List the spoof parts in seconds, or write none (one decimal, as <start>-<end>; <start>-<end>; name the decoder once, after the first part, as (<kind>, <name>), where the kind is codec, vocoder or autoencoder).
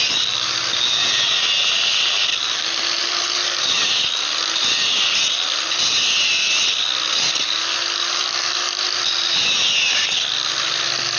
none